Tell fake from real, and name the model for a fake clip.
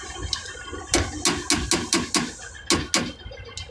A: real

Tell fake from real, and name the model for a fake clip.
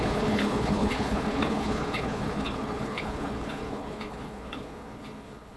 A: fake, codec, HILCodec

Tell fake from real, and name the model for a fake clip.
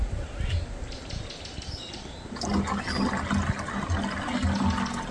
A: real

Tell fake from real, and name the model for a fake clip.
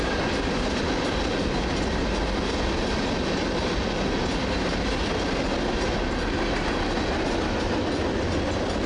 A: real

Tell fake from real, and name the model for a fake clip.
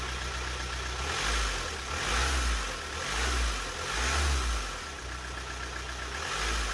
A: real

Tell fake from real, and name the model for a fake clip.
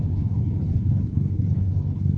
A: fake, codec, HILCodec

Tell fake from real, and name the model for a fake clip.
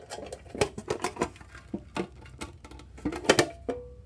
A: real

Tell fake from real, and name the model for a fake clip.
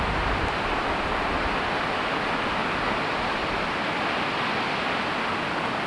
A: real